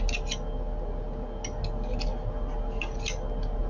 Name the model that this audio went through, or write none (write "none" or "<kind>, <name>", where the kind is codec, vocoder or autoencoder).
none